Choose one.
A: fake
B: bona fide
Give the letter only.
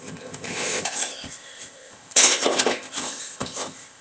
A